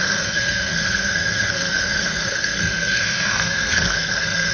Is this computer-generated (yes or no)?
yes